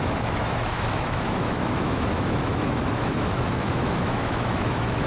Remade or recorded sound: remade